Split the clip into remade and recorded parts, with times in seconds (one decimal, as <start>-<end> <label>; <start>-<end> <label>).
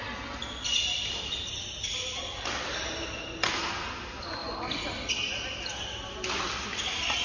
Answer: 0.0-7.2 recorded